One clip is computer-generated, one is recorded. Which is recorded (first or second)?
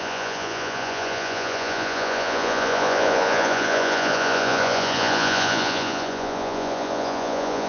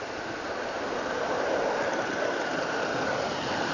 second